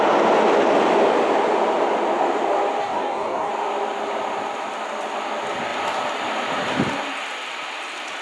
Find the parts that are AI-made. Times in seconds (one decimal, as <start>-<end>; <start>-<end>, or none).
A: 2.8-3.5